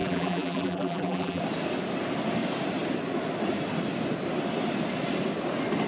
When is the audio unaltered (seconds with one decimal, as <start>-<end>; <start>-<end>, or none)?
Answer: 1.4-5.9